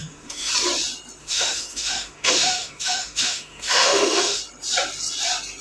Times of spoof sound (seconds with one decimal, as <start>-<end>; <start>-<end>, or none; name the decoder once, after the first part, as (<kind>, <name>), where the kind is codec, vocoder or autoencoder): 0.0-0.5 (autoencoder, DAC-VAE); 1.2-4.4